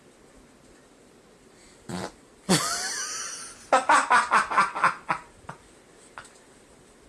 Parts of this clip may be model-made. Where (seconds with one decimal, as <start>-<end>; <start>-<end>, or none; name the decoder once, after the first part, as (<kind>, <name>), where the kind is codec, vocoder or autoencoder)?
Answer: none